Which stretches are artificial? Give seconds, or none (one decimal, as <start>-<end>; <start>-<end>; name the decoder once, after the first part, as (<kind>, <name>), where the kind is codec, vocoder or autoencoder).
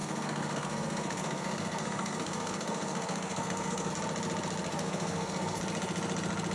0.0-3.9 (codec, SNAC); 4.7-5.6